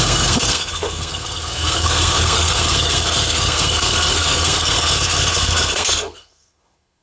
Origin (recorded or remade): remade